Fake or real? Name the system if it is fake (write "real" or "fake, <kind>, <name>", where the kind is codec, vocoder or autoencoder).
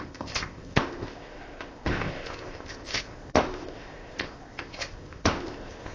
fake, codec, ZipCodec